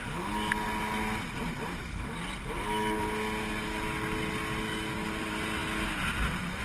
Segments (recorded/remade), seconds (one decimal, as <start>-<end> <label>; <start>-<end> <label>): 0.0-6.6 recorded